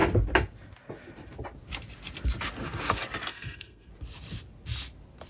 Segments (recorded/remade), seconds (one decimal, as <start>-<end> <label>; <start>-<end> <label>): 0.0-3.3 recorded; 3.3-3.9 remade; 3.9-5.3 recorded